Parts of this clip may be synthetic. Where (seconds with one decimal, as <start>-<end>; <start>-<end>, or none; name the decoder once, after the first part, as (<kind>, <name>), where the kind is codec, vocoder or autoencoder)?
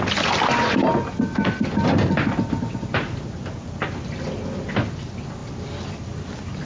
none